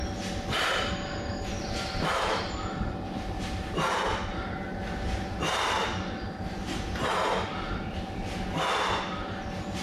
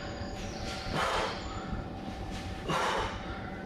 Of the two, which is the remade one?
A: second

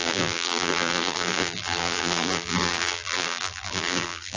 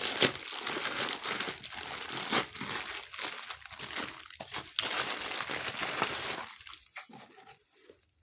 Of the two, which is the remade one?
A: first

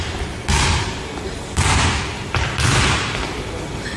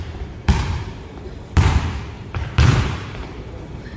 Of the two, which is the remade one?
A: second